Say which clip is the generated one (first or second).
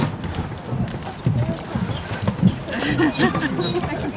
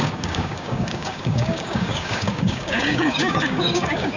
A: second